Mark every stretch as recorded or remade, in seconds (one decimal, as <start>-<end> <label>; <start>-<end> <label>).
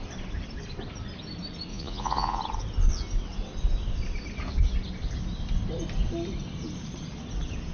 0.0-1.7 recorded; 1.7-2.4 remade; 2.4-7.7 recorded